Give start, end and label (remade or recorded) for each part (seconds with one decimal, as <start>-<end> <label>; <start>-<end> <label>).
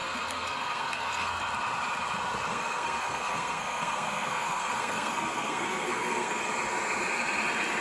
0.0-1.4 remade; 1.4-2.5 recorded; 2.5-6.4 remade; 6.4-7.8 recorded